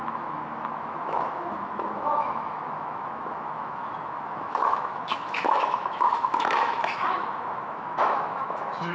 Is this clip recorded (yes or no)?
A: no